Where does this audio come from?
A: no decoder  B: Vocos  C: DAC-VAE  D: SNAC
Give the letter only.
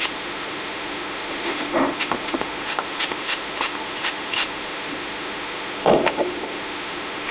C